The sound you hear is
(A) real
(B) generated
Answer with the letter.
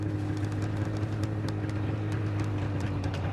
A